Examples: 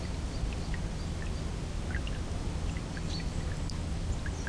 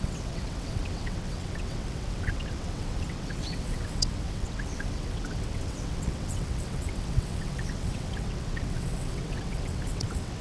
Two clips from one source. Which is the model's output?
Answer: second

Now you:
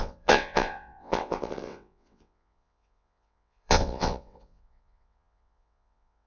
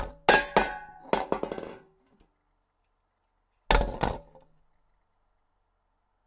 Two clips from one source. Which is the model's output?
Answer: first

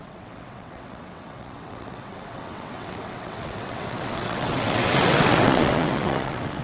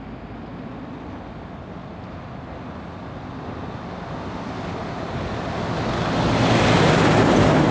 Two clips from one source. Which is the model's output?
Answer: first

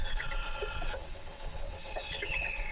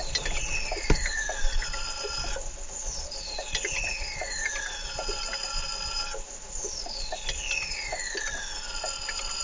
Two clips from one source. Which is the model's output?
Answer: first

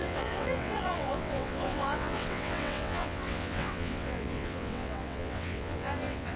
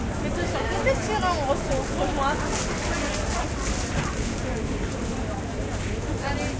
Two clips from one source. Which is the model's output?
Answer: first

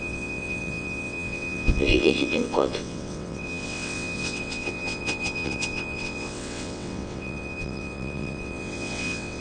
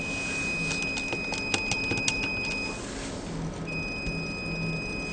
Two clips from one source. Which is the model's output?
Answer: first